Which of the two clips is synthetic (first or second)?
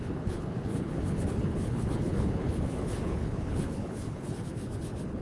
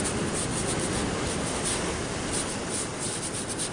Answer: first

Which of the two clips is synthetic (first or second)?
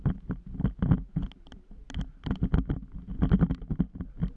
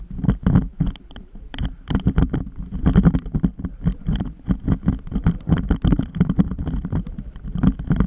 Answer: second